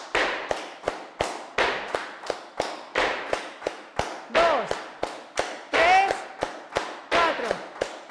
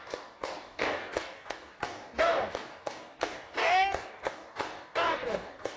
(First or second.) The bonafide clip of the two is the first